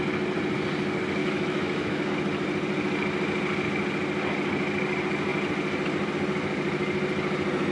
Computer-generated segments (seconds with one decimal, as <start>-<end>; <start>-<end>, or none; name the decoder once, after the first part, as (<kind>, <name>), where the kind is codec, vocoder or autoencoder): 1.2-2.1 (autoencoder, DAC-VAE)